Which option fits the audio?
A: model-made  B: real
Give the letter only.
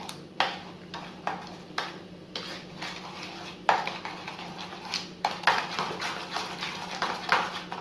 B